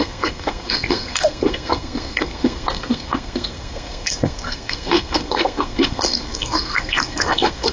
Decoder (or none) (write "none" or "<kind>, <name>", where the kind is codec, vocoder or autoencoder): codec, SNAC